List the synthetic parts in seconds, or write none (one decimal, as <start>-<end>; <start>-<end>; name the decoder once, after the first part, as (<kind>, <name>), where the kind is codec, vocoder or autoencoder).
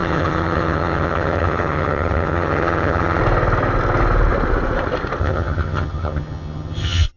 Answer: 0.0-3.2 (vocoder, HiFi-GAN); 5.2-7.2